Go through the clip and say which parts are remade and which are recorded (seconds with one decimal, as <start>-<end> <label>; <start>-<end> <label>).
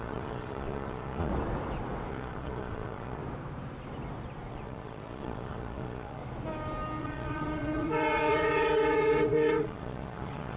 0.0-1.3 remade; 1.3-2.1 recorded; 2.1-3.2 remade; 3.2-4.5 recorded; 4.5-6.2 remade; 6.2-7.0 recorded; 7.0-10.6 remade